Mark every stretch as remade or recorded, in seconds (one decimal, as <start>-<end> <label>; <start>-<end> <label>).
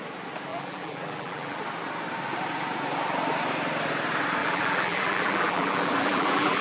0.0-0.5 recorded; 0.5-1.6 remade; 1.6-4.4 recorded; 4.4-6.6 remade